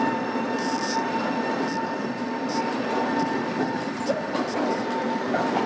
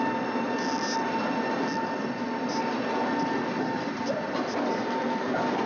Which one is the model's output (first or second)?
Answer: first